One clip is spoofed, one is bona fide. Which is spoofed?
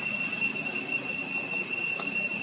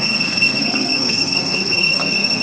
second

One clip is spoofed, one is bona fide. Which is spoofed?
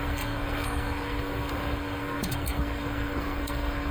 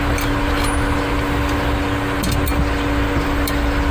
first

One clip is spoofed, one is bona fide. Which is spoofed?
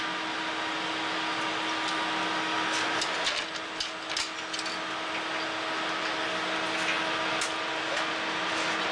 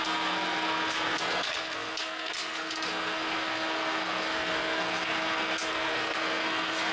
second